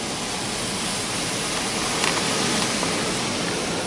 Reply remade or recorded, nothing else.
recorded